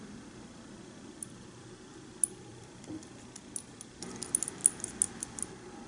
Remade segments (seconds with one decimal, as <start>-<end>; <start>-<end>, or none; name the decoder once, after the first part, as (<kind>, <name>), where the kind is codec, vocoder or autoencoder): 2.5-3.4 (vocoder, BigVGAN v2)